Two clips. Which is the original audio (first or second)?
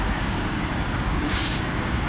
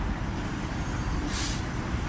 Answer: second